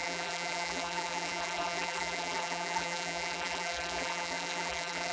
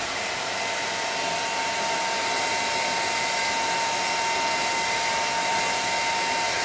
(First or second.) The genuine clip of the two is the second